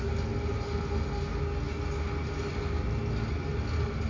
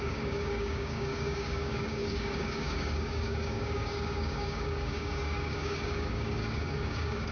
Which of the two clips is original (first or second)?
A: first